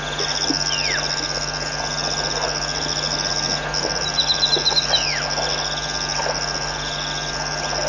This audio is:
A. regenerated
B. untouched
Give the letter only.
B